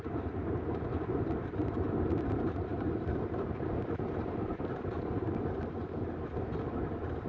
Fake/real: fake